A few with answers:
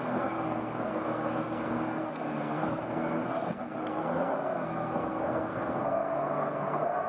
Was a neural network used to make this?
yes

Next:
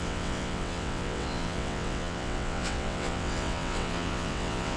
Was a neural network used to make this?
yes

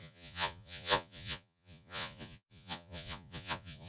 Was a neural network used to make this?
yes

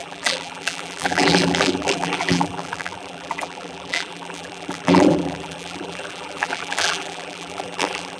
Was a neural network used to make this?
yes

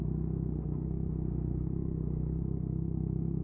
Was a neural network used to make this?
yes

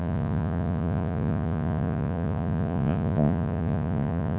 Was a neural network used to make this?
yes